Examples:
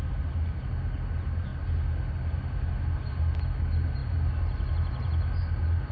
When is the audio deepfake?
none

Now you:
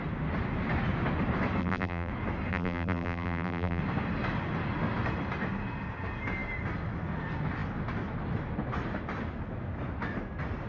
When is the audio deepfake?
1.6-2.1 (vocoder, BigVGAN v2); 2.5-3.8